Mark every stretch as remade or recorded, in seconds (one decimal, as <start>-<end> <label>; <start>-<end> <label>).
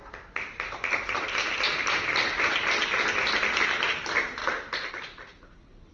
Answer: 0.0-5.9 recorded